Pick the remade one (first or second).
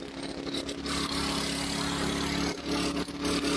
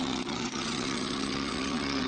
second